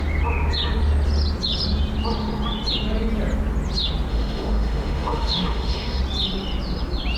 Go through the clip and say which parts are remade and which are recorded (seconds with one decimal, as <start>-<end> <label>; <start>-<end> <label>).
0.0-4.1 recorded; 4.1-6.0 remade; 6.0-7.2 recorded